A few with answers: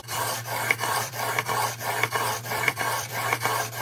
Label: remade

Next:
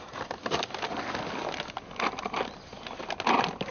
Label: recorded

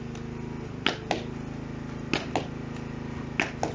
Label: recorded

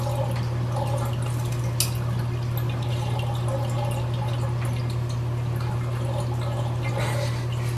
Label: recorded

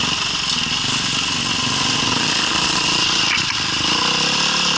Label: recorded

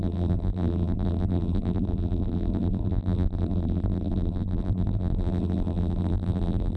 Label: remade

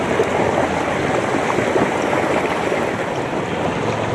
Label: recorded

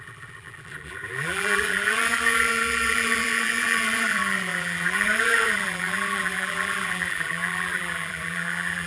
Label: remade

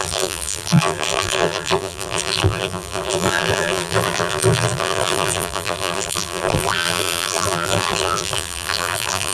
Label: remade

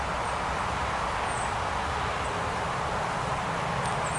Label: recorded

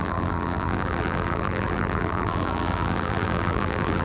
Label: remade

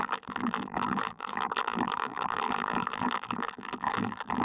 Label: remade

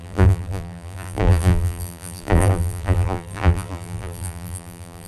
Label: remade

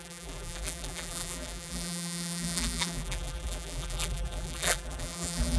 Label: remade